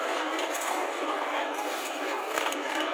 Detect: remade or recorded remade